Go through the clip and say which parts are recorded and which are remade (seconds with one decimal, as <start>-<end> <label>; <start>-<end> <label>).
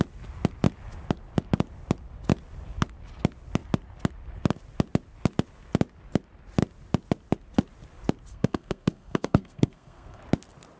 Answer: 0.0-8.3 recorded; 8.3-10.2 remade; 10.2-10.8 recorded